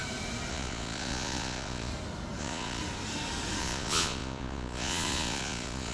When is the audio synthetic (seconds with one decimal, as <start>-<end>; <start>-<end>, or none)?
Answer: 0.5-1.9; 2.4-2.8; 3.6-5.9